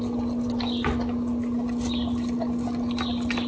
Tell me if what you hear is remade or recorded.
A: recorded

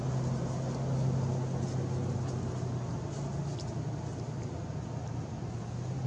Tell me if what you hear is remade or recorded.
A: recorded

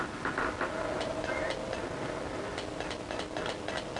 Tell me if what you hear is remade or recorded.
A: recorded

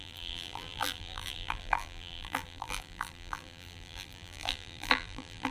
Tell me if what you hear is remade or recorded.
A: remade